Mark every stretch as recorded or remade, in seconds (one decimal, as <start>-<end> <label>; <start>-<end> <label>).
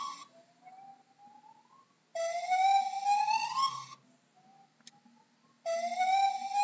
0.0-6.6 recorded